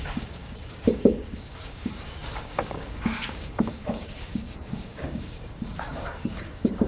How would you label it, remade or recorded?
remade